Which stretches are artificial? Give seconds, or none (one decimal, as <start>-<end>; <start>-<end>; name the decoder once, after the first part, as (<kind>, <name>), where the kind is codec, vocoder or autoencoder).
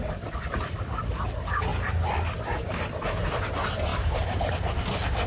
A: none